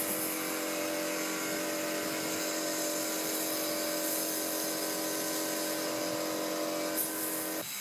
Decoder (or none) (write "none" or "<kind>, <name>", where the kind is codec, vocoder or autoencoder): none